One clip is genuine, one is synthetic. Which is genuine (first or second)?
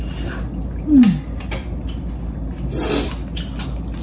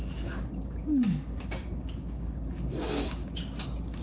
first